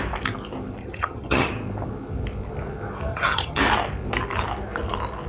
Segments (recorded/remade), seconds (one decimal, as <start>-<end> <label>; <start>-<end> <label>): 0.0-0.8 recorded; 0.8-1.5 remade; 1.5-3.1 recorded; 3.1-3.6 remade; 3.6-5.3 recorded